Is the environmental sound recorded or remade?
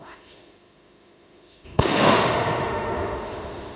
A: remade